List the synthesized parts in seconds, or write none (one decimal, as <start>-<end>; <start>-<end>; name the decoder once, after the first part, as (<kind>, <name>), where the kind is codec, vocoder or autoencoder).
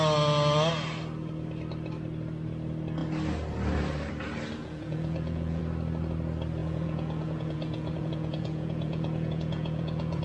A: 4.6-5.6 (vocoder, Vocos); 6.6-10.2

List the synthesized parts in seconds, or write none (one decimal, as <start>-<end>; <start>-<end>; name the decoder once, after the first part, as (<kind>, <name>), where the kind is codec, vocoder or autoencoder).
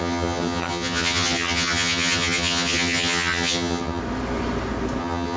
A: 0.0-4.0 (vocoder, HiFi-GAN); 5.0-5.4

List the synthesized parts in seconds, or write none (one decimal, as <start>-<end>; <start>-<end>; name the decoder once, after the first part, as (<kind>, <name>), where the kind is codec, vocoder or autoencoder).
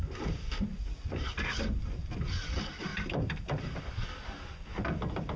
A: 2.9-3.8 (vocoder, BigVGAN v2)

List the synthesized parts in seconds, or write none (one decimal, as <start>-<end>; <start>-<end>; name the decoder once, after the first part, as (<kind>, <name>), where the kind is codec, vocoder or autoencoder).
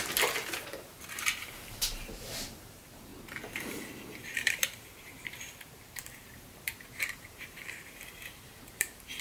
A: 0.0-3.1 (vocoder, BigVGAN v2); 4.2-9.2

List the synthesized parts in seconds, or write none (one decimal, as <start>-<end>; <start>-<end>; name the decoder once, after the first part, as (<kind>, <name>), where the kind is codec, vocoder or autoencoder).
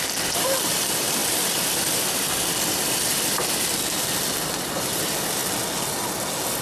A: 1.2-5.0 (vocoder, BigVGAN v2)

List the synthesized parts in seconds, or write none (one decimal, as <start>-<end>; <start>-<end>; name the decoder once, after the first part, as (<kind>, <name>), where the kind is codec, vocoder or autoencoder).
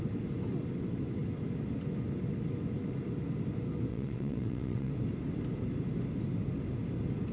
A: 3.9-4.9 (vocoder, WaveNeXt)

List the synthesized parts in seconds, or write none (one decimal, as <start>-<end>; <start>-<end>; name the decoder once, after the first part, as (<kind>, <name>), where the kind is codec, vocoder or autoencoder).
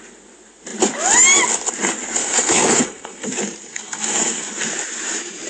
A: 2.2-3.3 (codec, SNAC); 3.7-4.5